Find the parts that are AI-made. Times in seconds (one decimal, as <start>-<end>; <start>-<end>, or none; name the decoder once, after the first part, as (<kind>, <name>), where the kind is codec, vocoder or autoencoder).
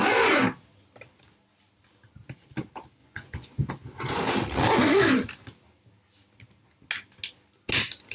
3.0-3.7 (vocoder, Vocos)